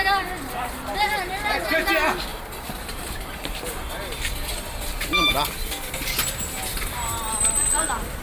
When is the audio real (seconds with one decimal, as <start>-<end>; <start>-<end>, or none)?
1.5-2.3; 5.1-6.7